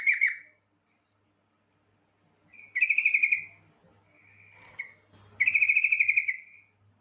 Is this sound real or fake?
real